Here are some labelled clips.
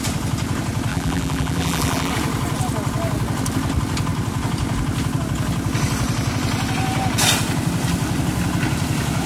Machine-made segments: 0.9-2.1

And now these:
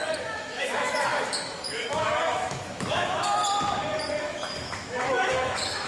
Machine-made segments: 0.0-3.4; 4.2-5.9

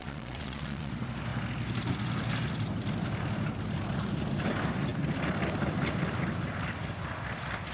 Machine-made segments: 0.0-0.9

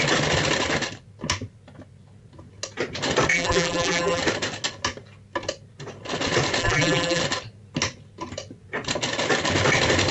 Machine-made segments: 3.3-4.2; 6.6-7.2